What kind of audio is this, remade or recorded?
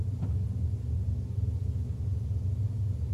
recorded